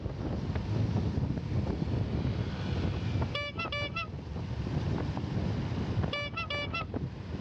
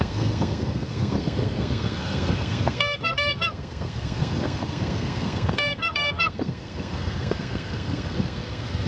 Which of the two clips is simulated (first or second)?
second